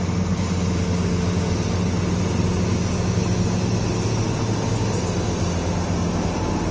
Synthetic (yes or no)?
no